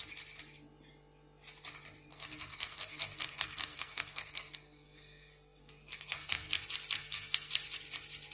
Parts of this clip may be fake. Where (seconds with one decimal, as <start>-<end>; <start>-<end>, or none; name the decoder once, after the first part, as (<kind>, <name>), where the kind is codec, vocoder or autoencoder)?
2.1-6.6 (codec, SNAC); 7.0-7.5